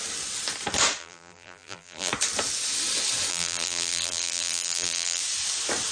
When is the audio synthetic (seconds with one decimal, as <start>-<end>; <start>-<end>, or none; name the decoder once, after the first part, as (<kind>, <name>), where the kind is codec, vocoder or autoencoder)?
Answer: 1.0-2.1 (vocoder, BigVGAN v2); 3.3-5.2